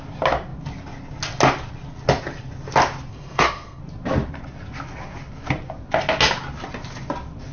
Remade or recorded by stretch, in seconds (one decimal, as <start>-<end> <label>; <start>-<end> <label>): 0.0-3.1 recorded; 3.1-3.8 remade; 3.8-7.5 recorded